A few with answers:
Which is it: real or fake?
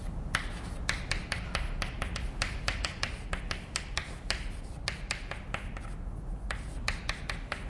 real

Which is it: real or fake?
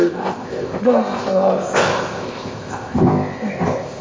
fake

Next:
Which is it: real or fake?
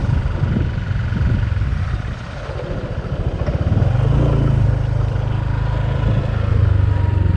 real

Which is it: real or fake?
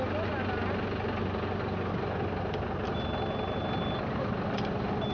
real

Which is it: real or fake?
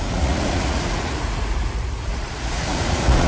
fake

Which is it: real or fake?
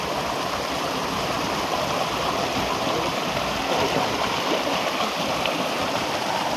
real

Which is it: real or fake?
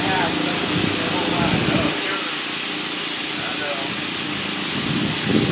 real